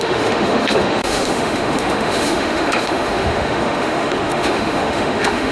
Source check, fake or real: fake